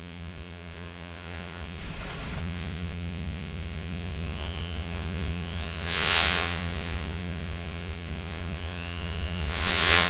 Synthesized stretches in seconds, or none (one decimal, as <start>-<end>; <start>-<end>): 0.0-1.8; 2.4-10.1